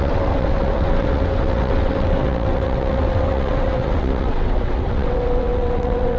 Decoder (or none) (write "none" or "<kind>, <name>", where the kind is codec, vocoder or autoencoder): vocoder, WaveNeXt